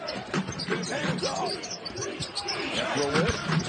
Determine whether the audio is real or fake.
fake